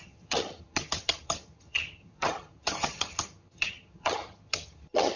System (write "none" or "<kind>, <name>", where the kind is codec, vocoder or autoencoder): vocoder, HiFi-GAN